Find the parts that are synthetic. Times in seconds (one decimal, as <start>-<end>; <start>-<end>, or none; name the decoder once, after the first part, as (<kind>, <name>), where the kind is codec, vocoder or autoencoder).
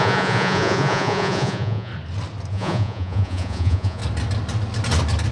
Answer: 0.0-1.9 (vocoder, Vocos); 2.5-4.0